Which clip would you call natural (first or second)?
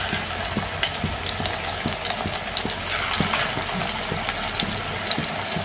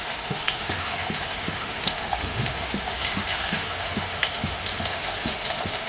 first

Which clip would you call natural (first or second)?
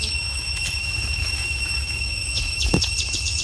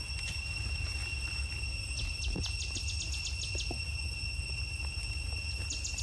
second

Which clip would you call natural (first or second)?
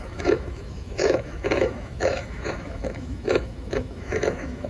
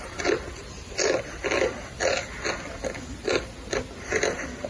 second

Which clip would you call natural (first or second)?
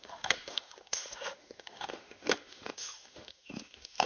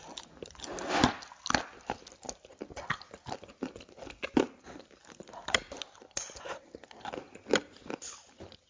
second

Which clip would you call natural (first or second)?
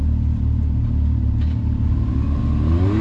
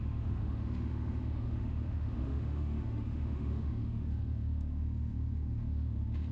first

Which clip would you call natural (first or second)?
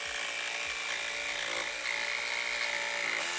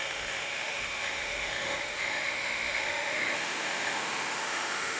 first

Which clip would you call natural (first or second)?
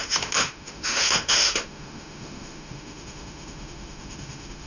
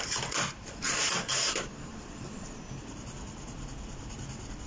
second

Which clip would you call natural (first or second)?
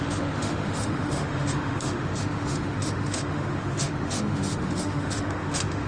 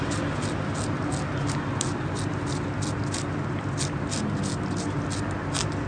second